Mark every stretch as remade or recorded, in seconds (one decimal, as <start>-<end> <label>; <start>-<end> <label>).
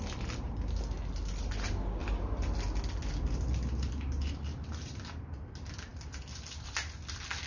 0.0-7.5 recorded